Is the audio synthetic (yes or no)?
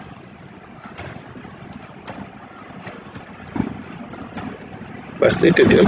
yes